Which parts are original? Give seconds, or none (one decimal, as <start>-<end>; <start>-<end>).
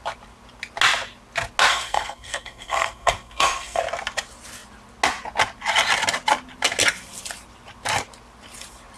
0.0-1.7; 3.8-9.0